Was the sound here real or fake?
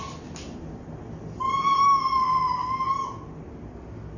real